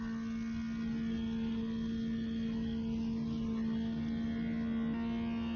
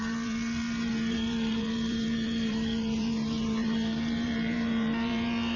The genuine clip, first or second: first